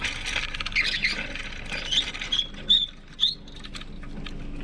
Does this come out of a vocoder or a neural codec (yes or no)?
no